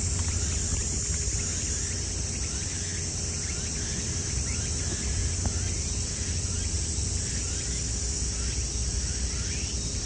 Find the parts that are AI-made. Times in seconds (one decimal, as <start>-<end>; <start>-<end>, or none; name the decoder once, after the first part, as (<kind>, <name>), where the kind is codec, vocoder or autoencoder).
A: none